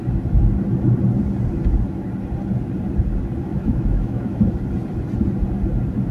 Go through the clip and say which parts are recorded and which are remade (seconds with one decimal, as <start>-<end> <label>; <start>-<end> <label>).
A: 0.0-3.5 recorded; 3.5-4.4 remade; 4.4-6.1 recorded